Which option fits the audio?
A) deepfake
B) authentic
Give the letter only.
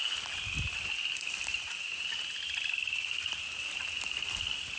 B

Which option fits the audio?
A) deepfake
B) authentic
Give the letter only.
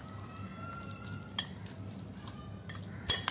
B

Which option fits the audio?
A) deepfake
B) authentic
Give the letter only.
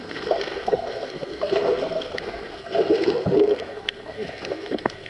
A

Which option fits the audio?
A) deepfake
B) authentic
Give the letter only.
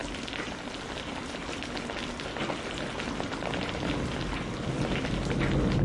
B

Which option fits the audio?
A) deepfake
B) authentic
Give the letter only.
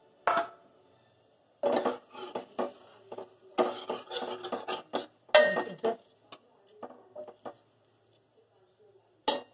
B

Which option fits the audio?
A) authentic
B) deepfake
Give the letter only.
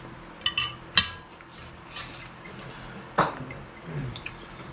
A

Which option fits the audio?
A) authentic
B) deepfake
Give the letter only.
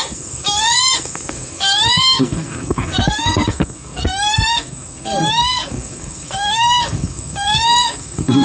B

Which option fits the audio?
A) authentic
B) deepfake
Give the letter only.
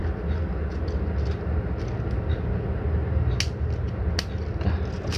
A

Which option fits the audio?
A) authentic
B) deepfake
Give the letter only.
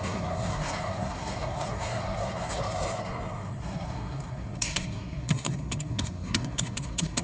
B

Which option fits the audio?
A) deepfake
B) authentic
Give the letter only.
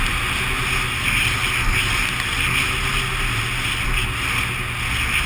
B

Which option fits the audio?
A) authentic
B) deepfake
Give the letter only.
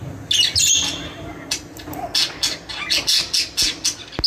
A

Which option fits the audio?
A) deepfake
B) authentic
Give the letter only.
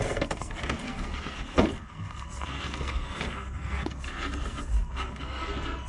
A